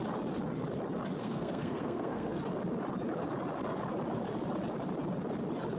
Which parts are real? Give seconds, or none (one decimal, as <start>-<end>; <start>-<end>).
0.0-1.2; 2.4-5.8